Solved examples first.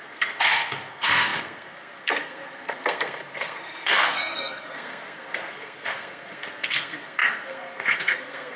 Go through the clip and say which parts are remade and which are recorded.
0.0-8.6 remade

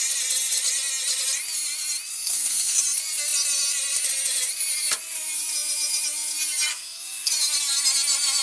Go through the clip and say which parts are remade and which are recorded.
0.0-2.1 recorded; 2.1-2.8 remade; 2.8-6.7 recorded; 6.7-7.3 remade; 7.3-8.4 recorded

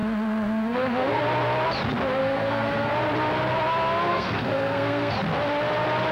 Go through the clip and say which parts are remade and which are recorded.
0.0-1.2 remade; 1.2-2.2 recorded; 2.2-2.9 remade; 2.9-4.1 recorded; 4.1-5.1 remade; 5.1-6.1 recorded